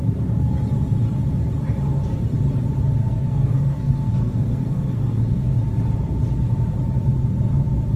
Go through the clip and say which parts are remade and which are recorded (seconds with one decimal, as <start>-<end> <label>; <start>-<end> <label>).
0.0-3.0 recorded; 3.0-5.4 remade; 5.4-8.0 recorded